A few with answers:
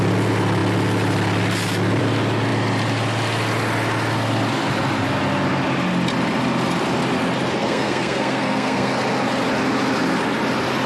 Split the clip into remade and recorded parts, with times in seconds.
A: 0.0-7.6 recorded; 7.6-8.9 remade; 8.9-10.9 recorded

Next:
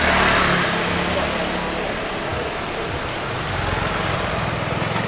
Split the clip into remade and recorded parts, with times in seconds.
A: 0.0-5.1 recorded

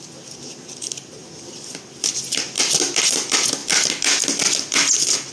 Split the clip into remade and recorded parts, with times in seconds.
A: 0.0-5.3 recorded

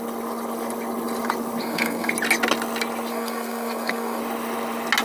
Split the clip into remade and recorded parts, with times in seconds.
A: 0.0-1.6 recorded; 1.6-2.1 remade; 2.1-3.1 recorded; 3.1-4.2 remade; 4.2-5.0 recorded

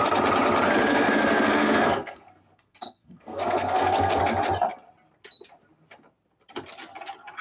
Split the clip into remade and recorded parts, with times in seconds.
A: 0.0-0.9 recorded; 0.9-4.2 remade; 4.2-7.4 recorded

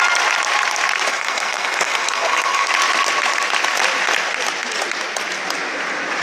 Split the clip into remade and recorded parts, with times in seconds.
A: 0.0-1.1 recorded; 1.1-2.7 remade; 2.7-6.2 recorded

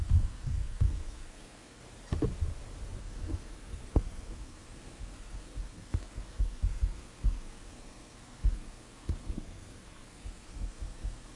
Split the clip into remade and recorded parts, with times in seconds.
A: 0.0-1.8 remade; 1.8-3.0 recorded; 3.0-11.4 remade

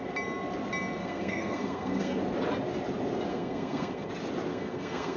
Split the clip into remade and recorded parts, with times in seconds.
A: 0.0-1.0 recorded; 1.0-2.2 remade; 2.2-3.3 recorded; 3.3-4.1 remade; 4.1-4.5 recorded; 4.5-5.2 remade